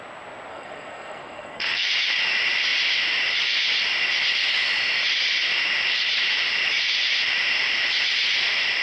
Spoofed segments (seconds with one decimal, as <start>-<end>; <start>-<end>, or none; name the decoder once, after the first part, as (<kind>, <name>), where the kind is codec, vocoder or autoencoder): 0.5-1.9 (codec, SNAC)